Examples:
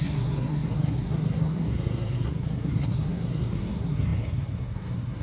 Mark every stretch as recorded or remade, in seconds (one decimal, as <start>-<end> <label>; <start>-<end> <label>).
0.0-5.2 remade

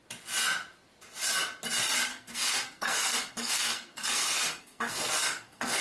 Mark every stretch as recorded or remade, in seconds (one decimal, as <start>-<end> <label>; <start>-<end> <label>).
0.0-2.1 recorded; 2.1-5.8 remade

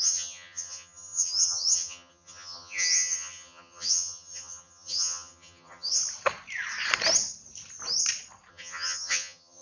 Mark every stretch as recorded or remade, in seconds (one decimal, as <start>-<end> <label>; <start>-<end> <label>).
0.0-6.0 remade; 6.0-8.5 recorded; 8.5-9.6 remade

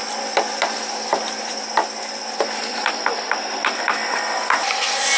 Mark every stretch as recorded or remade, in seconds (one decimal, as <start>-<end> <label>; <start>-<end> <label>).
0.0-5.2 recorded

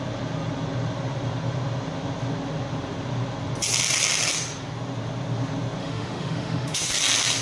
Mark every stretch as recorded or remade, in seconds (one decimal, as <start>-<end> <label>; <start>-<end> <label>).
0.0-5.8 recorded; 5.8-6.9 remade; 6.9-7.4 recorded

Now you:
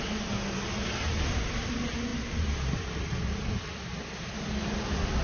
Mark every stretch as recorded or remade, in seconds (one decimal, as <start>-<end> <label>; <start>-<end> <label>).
0.0-5.2 recorded

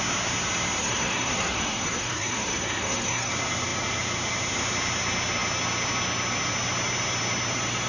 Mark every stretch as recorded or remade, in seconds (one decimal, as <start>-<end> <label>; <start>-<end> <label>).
0.0-0.8 recorded; 0.8-3.3 remade; 3.3-7.9 recorded

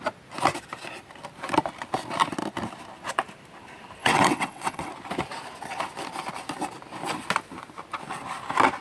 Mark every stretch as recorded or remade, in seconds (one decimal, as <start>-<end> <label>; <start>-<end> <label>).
0.0-4.0 recorded; 4.0-4.9 remade; 4.9-8.8 recorded